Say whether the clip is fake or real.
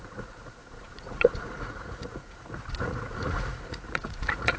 fake